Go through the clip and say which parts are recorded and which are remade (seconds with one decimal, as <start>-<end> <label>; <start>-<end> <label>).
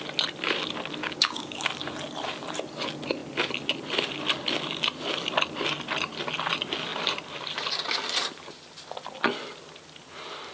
0.0-1.0 recorded; 1.0-1.7 remade; 1.7-10.5 recorded